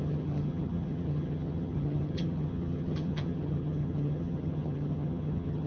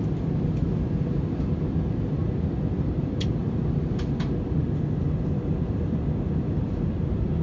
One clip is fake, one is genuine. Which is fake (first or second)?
first